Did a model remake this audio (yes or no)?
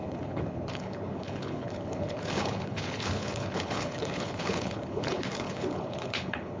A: yes